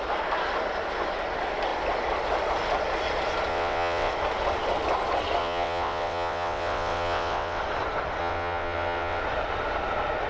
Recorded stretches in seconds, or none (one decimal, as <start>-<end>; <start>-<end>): 0.0-3.5; 4.1-5.4; 7.6-8.2; 9.2-10.3